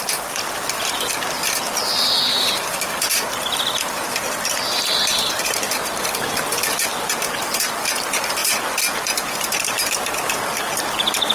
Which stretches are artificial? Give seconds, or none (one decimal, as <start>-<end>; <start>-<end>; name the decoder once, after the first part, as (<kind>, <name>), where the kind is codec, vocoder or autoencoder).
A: 0.0-5.1 (vocoder, BigVGAN v2); 6.1-8.4; 9.7-11.3